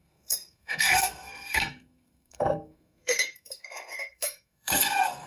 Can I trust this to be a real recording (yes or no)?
no